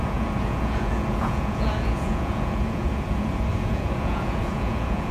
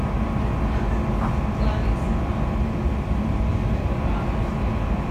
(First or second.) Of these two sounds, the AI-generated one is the first